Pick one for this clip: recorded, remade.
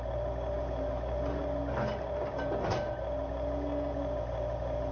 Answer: recorded